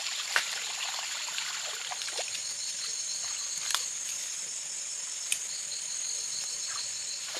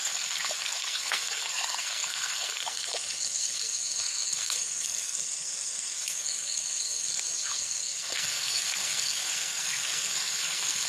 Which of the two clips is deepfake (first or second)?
second